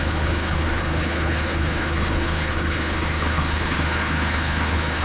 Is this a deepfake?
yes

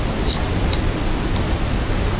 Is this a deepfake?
no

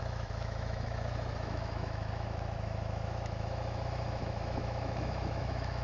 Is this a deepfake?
yes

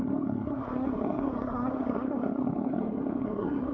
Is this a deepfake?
yes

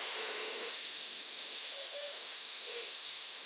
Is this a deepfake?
yes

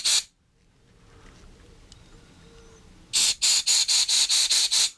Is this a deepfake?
no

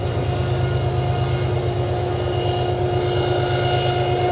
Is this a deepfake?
no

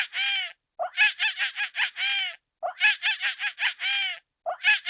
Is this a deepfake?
no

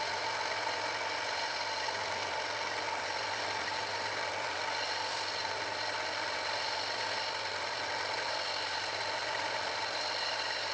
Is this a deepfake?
no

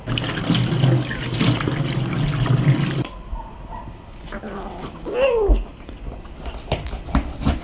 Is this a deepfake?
no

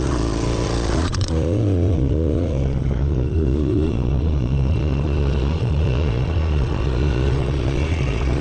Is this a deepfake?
yes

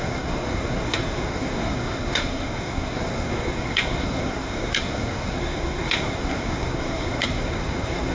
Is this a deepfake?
yes